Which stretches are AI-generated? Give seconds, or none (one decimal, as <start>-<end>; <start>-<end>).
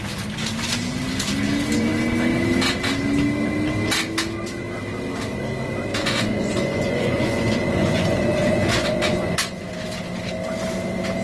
5.9-9.7